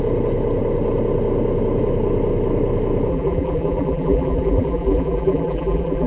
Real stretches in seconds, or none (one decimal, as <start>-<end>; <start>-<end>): 0.0-3.1

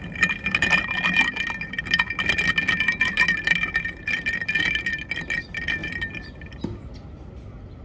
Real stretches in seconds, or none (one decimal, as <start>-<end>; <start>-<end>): 0.0-7.8

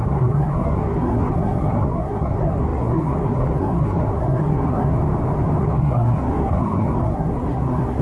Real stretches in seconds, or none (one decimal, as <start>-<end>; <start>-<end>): 4.9-5.6